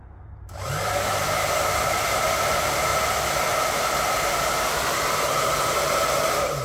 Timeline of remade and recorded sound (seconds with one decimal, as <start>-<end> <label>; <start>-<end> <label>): 0.0-2.9 remade; 2.9-4.9 recorded; 4.9-6.6 remade